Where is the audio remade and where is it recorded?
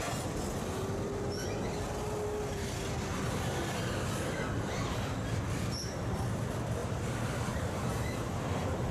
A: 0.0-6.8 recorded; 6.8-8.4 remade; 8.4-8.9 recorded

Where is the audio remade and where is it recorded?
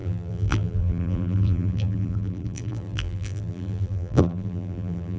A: 0.0-5.2 remade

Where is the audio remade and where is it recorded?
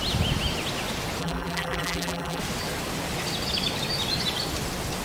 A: 0.0-1.2 recorded; 1.2-2.4 remade; 2.4-5.0 recorded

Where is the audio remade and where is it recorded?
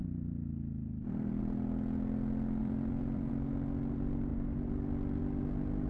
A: 0.0-1.4 remade; 1.4-2.6 recorded; 2.6-3.3 remade; 3.3-5.9 recorded